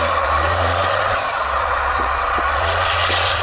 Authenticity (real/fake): fake